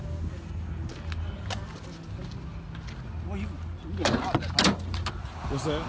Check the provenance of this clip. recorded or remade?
recorded